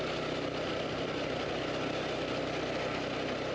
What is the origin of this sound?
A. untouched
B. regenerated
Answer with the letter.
A